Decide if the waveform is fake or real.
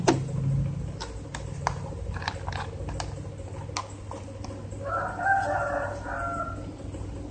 real